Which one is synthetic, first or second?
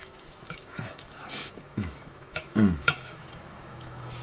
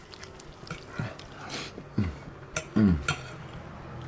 first